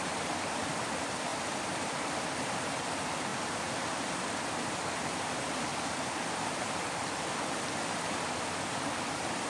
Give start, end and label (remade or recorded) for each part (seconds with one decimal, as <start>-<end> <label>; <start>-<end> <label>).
0.0-5.7 remade; 5.7-6.3 recorded; 6.3-9.5 remade